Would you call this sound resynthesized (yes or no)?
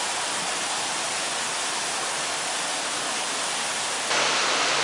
no